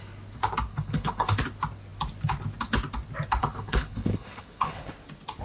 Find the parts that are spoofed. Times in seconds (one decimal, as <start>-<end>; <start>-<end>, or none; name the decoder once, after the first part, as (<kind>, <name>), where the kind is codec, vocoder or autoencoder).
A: 0.7-1.4 (codec, HILCodec); 3.4-4.9